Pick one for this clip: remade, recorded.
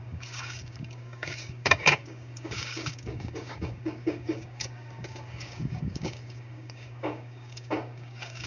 remade